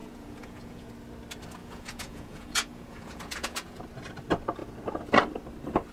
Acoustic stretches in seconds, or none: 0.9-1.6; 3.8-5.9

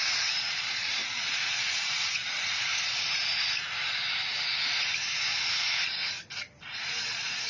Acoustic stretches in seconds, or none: 2.7-6.6

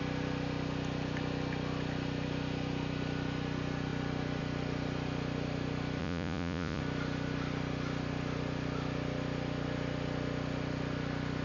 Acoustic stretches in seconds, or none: 0.0-6.0; 6.8-11.4

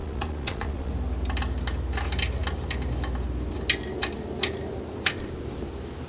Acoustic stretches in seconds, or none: 0.9-6.1

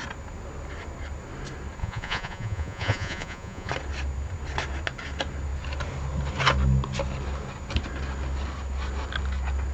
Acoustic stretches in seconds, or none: 0.0-1.8; 3.7-9.7